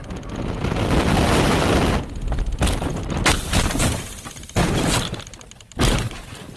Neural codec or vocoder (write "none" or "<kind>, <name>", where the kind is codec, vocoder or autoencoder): none